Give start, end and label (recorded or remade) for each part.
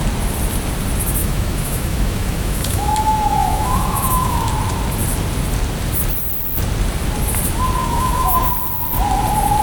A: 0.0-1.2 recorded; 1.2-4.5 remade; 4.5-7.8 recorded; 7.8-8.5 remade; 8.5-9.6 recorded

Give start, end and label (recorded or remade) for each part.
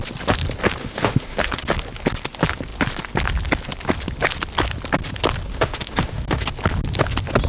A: 0.0-0.8 recorded; 0.8-1.5 remade; 1.5-5.5 recorded; 5.5-6.4 remade; 6.4-7.5 recorded